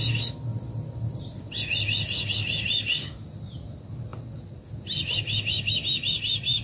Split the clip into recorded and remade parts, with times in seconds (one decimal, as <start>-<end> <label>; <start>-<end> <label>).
0.0-6.6 recorded